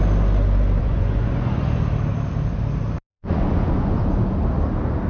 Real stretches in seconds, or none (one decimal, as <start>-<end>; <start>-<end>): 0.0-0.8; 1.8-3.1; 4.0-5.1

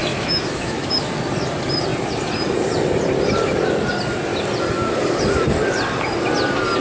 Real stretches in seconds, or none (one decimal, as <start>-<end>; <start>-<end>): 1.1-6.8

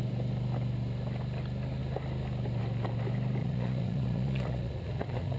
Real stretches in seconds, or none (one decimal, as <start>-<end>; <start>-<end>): 0.0-3.4

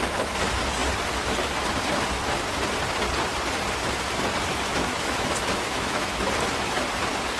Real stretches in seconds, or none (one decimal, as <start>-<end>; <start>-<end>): 0.0-4.7; 6.3-7.4